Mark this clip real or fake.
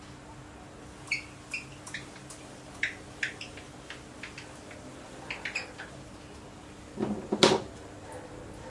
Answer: real